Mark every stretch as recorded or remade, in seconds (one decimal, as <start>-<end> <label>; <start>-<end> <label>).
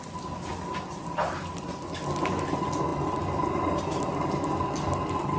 0.0-5.4 recorded